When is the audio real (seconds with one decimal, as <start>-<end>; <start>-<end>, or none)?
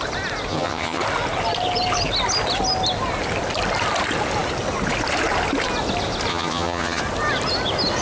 0.0-0.5; 1.0-6.3; 7.0-8.0